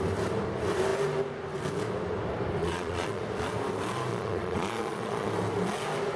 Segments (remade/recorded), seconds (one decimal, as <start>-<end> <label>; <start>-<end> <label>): 0.0-2.6 recorded; 2.6-3.2 remade; 3.2-4.1 recorded; 4.1-5.3 remade; 5.3-6.2 recorded